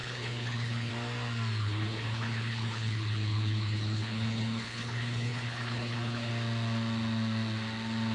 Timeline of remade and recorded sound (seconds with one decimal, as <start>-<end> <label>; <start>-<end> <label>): 0.0-0.9 remade; 0.9-1.6 recorded; 1.6-6.3 remade; 6.3-8.1 recorded